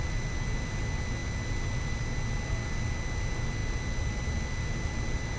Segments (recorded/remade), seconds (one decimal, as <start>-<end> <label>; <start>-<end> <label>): 0.0-5.4 recorded